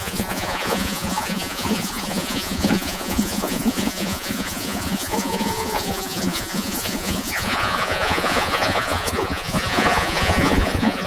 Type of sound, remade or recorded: remade